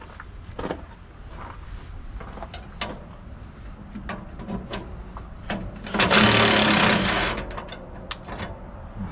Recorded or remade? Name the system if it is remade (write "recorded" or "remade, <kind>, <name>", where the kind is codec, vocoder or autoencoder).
recorded